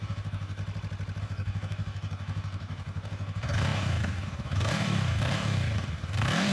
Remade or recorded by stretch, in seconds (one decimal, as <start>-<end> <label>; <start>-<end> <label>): 0.0-0.6 remade; 0.6-1.2 recorded; 1.2-6.5 remade